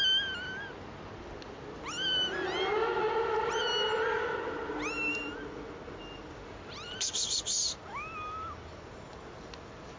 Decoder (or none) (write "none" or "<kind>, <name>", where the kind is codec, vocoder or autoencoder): none